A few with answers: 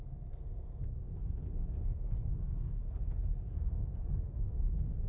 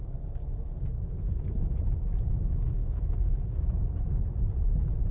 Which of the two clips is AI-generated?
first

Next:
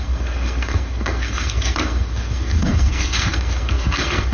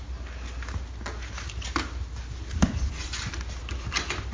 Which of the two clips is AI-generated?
first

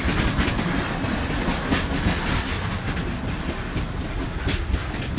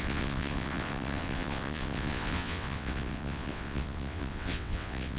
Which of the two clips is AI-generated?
second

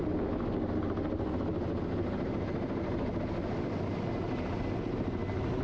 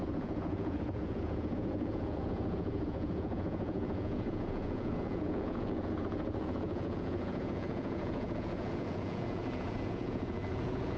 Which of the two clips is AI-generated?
second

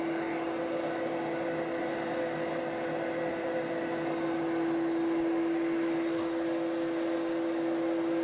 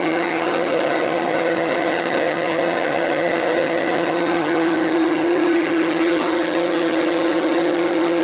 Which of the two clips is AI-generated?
second